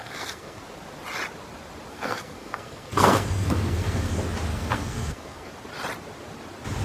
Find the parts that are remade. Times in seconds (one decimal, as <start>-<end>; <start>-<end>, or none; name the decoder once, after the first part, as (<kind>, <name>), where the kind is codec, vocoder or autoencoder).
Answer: 0.0-0.6 (codec, SNAC); 1.9-4.1; 4.5-5.5